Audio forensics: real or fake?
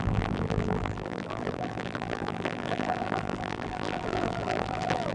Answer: fake